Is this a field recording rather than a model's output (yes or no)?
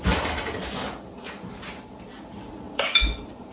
yes